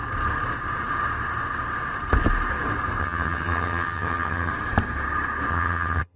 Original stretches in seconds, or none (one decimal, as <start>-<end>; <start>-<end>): 0.0-3.0; 4.5-5.5